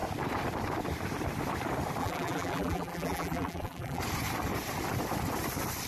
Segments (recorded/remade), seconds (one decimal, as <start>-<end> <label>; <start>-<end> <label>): 0.0-2.0 recorded; 2.0-4.0 remade; 4.0-5.9 recorded